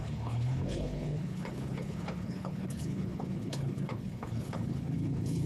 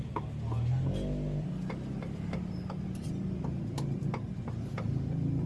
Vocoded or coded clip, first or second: first